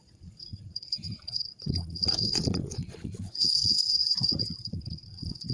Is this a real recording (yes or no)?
no